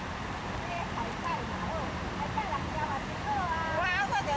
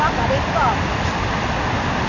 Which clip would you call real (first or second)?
second